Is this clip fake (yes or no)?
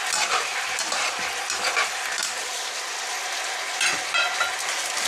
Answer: no